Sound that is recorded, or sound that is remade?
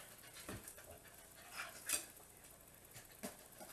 recorded